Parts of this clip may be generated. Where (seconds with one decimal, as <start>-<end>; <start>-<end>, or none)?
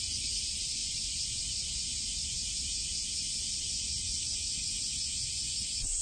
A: 0.0-2.8; 3.7-6.0